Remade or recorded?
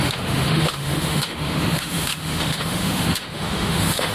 remade